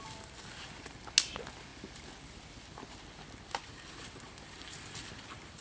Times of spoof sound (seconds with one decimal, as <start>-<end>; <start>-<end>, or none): none